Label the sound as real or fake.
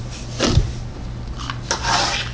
real